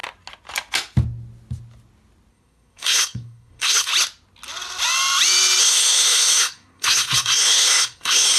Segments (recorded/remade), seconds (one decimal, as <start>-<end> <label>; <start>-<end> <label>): 0.0-2.3 recorded; 2.3-3.9 remade; 3.9-5.6 recorded; 5.6-8.4 remade